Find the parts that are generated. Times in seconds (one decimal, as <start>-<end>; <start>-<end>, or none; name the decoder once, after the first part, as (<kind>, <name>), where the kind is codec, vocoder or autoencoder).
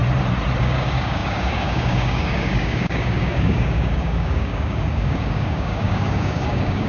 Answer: 0.6-6.9 (codec, DAC)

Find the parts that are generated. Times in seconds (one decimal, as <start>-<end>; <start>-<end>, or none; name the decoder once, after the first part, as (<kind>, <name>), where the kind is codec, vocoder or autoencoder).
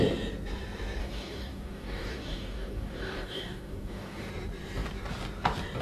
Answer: 1.0-4.3 (codec, DAC)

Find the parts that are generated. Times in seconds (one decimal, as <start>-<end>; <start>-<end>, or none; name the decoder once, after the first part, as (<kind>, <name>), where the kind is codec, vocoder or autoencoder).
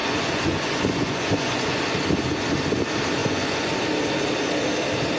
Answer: 0.0-1.8 (vocoder, Vocos); 3.2-3.7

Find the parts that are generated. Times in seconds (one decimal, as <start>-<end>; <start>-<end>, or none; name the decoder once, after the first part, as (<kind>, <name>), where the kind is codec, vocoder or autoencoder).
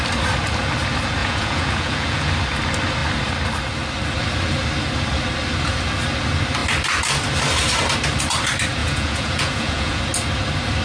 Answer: 1.2-2.3 (vocoder, Vocos); 8.8-10.0